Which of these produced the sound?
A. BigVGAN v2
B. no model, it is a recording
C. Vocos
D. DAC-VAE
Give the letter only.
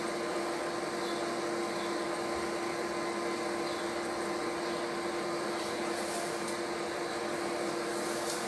B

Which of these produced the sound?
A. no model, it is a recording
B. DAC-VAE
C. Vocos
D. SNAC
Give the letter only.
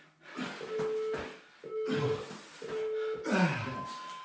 A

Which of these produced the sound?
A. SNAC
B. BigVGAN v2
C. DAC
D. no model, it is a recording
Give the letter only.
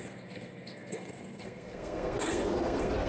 A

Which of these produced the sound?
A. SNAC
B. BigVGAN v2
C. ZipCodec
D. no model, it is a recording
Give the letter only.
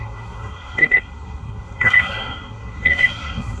A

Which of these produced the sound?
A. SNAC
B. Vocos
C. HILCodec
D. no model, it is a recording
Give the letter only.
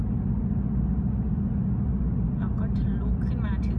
D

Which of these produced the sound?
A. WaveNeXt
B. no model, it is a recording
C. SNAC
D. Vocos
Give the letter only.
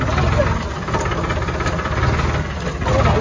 B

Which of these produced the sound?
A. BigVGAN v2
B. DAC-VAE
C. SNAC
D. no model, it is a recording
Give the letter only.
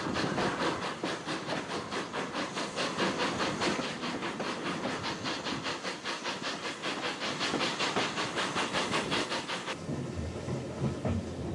D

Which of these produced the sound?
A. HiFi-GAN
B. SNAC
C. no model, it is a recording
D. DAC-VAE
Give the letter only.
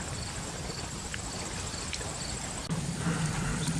C